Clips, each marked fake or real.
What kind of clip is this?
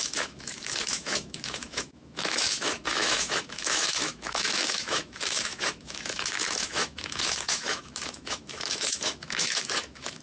fake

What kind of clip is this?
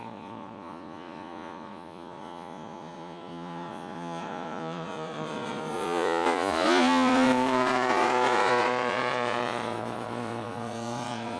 fake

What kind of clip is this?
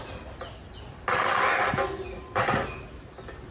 real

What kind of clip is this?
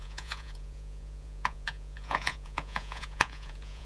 fake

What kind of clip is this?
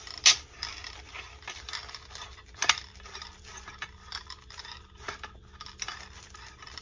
real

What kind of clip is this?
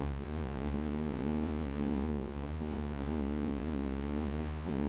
fake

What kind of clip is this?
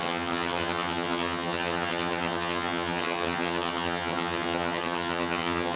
fake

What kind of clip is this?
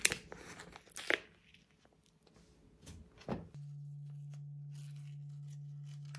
real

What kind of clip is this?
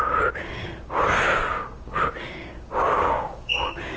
fake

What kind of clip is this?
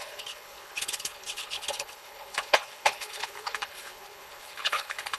fake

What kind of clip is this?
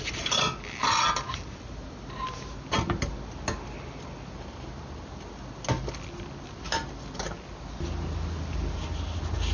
real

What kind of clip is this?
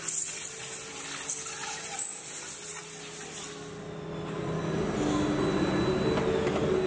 real